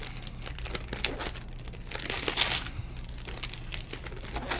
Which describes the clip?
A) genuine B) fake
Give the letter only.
A